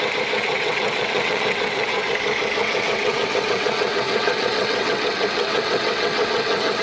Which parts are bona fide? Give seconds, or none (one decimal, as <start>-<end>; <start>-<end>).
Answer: 0.0-0.4; 2.1-2.6